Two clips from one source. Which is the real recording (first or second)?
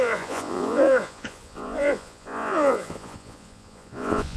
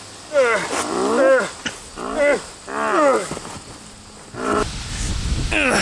second